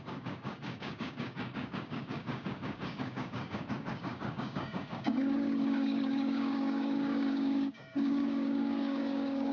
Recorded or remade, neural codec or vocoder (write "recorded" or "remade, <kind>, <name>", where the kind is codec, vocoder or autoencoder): remade, codec, DAC